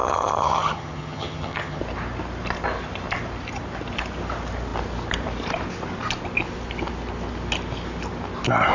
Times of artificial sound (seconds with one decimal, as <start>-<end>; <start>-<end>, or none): 0.0-1.8

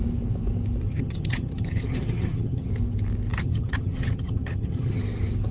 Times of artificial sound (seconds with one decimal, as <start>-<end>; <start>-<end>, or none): 0.9-2.7; 3.3-5.0